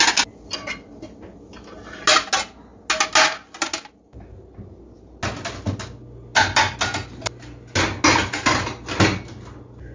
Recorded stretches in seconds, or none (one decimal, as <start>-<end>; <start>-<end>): 0.0-9.9